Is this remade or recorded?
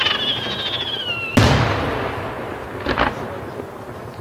recorded